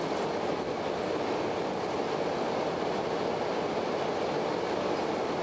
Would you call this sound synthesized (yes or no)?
no